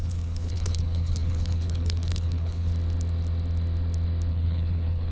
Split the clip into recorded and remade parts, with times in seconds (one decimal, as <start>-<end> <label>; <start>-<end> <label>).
0.0-2.7 remade; 2.7-4.3 recorded; 4.3-5.1 remade